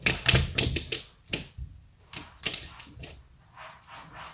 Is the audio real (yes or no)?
yes